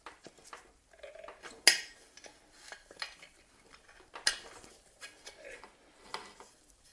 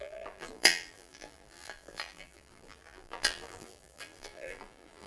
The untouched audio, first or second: first